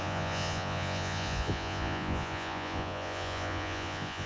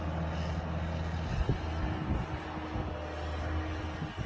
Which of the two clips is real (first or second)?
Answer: second